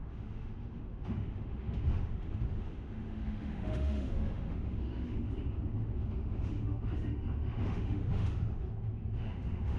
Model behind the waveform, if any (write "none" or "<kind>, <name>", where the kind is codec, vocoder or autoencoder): autoencoder, DAC-VAE